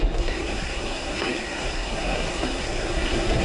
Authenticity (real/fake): fake